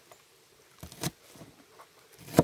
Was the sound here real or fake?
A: real